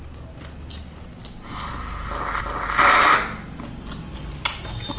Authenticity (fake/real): real